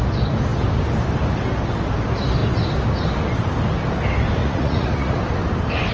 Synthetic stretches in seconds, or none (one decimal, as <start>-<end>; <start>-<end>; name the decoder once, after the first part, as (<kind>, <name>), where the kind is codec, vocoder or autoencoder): 4.4-5.2 (vocoder, Vocos)